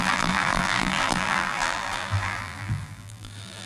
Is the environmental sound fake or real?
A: fake